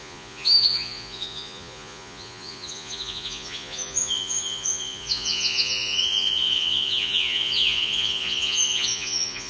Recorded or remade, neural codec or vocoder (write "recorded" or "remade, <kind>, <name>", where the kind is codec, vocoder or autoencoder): remade, vocoder, Vocos